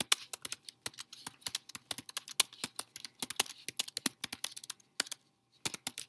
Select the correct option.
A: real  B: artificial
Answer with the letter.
A